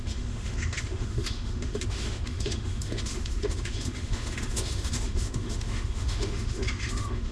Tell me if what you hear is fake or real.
fake